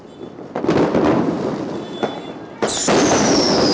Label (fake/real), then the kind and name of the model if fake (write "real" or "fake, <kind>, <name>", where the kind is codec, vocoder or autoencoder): fake, vocoder, BigVGAN v2